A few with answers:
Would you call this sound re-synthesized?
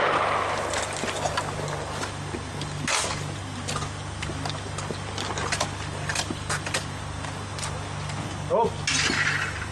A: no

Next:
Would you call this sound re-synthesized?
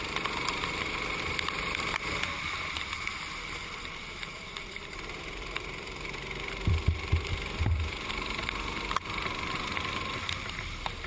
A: yes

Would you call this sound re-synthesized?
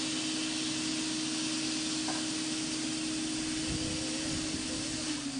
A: no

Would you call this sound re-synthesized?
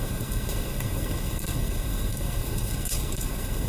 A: yes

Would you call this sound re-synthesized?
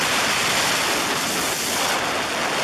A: no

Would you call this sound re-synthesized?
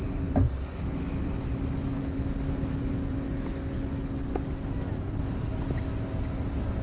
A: no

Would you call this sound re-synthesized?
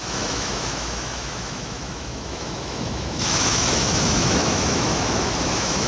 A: yes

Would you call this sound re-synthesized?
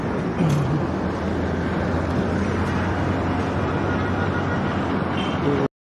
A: no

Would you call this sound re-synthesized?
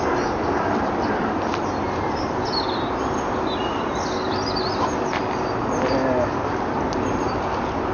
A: no